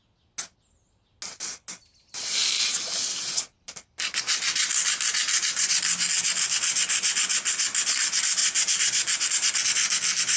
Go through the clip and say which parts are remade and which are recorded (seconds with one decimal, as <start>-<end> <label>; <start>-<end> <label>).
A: 0.0-10.4 recorded

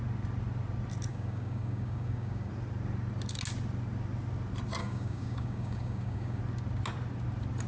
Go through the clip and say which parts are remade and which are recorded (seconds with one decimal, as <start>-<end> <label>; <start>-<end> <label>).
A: 0.0-1.1 recorded; 1.1-2.5 remade; 2.5-4.8 recorded; 4.8-6.4 remade; 6.4-7.7 recorded

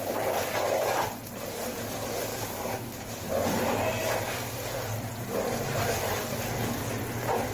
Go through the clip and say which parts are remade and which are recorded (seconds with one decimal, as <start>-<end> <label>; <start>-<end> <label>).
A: 0.0-2.3 recorded; 2.3-3.1 remade; 3.1-7.5 recorded

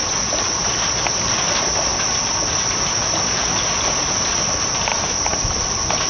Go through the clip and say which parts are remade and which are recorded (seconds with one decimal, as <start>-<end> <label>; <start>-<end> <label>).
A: 0.0-6.1 recorded

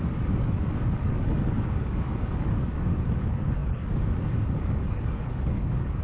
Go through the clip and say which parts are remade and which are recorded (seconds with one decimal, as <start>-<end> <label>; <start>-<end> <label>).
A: 0.0-6.0 remade

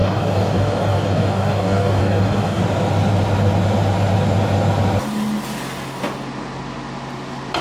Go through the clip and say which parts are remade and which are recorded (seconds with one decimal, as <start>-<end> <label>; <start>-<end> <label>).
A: 0.0-2.6 remade; 2.6-7.6 recorded

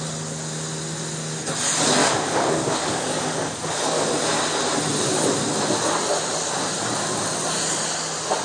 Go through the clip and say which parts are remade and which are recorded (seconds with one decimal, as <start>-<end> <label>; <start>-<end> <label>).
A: 0.0-2.0 recorded; 2.0-4.1 remade; 4.1-8.4 recorded